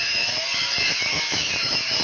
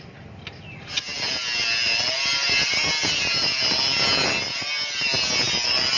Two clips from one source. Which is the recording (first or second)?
second